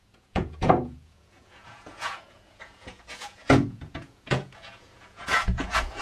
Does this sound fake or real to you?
fake